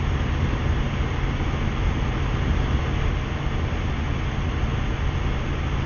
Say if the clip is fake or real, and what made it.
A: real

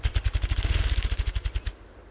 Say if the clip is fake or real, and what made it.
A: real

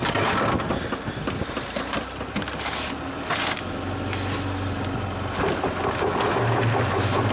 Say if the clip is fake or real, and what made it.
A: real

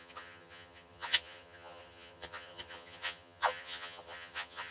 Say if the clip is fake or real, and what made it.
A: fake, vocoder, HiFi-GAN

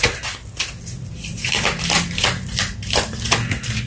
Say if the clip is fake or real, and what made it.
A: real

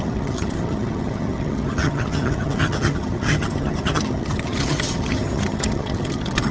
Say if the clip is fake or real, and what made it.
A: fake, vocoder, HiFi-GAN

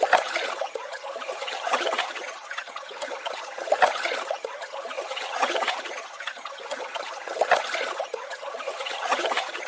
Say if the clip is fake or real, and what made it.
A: fake, vocoder, HiFi-GAN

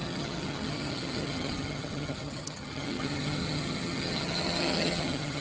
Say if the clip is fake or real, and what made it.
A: fake, vocoder, HiFi-GAN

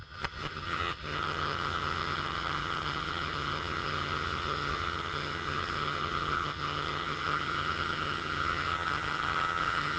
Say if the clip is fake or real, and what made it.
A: fake, vocoder, HiFi-GAN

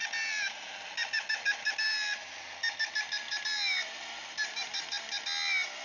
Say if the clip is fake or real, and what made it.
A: real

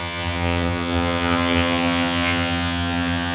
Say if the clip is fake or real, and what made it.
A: fake, vocoder, HiFi-GAN